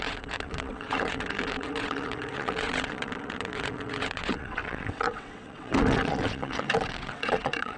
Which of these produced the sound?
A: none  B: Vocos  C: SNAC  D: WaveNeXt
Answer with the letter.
D